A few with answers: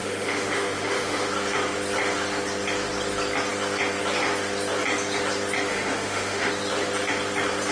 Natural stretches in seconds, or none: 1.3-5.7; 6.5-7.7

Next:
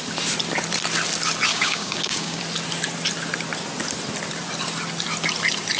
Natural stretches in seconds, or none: 0.0-1.5; 2.4-5.8

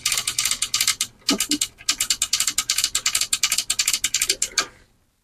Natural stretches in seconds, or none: 0.0-5.2

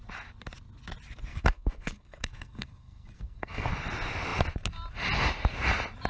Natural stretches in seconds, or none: 0.0-1.3; 3.7-6.1

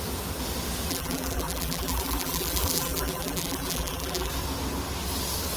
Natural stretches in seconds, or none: 0.0-0.9; 4.3-5.6

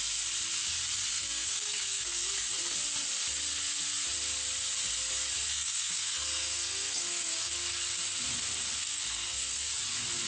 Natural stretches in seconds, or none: 0.0-1.1; 2.3-5.5; 7.5-8.8; 9.7-10.3